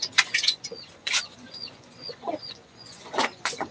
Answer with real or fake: fake